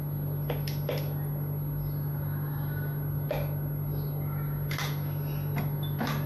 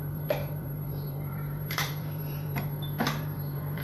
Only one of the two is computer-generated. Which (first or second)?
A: second